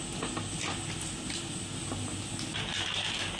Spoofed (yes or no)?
no